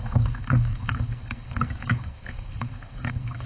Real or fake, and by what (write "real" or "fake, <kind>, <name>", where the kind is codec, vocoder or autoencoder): fake, codec, SNAC